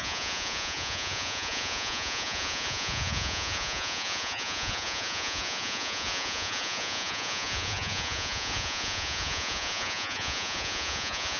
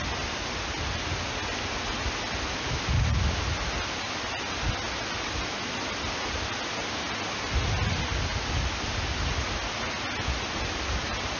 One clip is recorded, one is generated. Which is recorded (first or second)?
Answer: second